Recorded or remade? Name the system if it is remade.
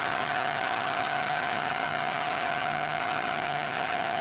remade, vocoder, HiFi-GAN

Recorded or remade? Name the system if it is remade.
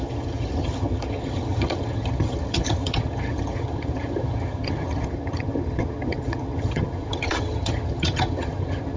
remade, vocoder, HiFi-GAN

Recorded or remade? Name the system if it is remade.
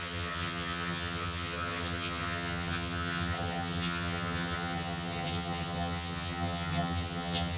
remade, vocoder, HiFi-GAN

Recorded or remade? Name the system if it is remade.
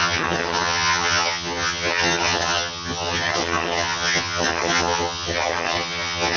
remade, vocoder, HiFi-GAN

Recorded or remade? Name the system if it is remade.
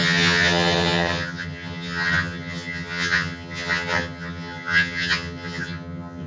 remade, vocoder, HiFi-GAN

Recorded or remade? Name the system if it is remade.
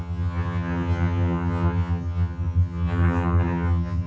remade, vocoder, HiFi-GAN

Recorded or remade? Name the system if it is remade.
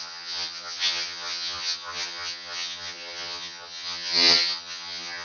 remade, vocoder, HiFi-GAN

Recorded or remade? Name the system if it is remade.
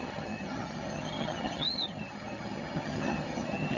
remade, vocoder, HiFi-GAN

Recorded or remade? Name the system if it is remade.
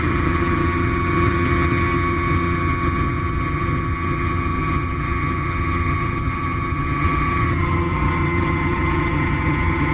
remade, vocoder, HiFi-GAN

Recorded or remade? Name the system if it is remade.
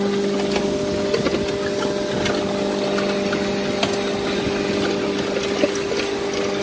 recorded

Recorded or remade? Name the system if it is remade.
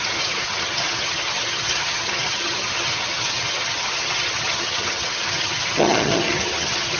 remade, vocoder, HiFi-GAN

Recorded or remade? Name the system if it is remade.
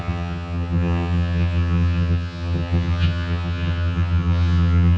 remade, vocoder, HiFi-GAN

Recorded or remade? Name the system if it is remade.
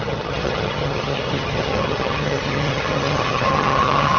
remade, vocoder, HiFi-GAN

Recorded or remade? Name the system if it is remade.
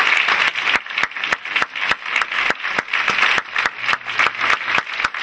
recorded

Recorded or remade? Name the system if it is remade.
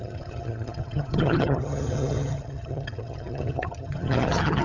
remade, vocoder, HiFi-GAN